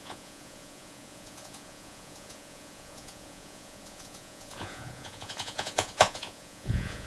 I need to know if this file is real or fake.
fake